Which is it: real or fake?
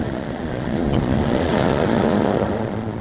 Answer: fake